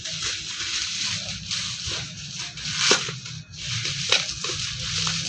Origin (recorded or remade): recorded